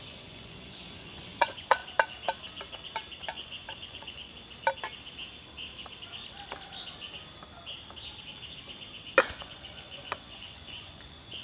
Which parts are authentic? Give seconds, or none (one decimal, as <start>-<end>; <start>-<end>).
1.8-3.2; 4.3-9.2